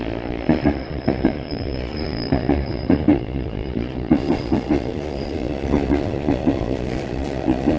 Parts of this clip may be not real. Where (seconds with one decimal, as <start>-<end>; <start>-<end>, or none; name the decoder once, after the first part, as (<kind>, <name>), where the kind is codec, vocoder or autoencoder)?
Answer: 0.0-7.8 (vocoder, Vocos)